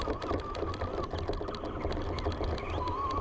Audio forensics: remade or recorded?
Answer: recorded